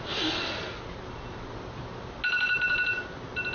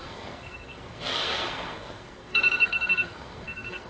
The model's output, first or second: second